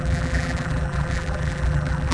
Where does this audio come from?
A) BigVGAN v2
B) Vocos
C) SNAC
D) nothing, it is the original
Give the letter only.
A